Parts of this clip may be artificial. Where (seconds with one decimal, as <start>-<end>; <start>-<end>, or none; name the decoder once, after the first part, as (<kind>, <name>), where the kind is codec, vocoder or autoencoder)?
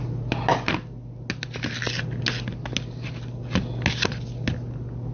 none